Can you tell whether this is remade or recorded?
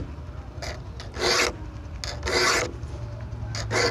recorded